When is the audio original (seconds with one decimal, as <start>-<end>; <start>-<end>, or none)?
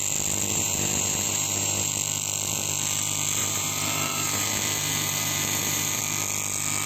0.0-0.5; 1.9-3.4; 6.0-6.9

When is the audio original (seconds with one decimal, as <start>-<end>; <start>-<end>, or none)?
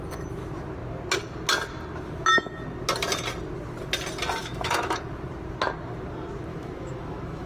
0.0-4.4; 5.0-6.5